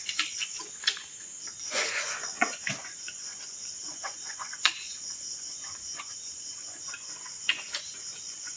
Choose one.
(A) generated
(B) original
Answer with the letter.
A